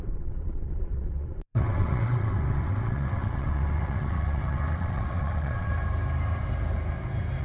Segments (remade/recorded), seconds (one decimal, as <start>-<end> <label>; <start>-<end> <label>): 0.0-5.7 remade; 5.7-7.4 recorded